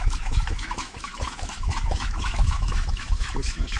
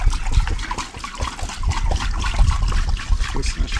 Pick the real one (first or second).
second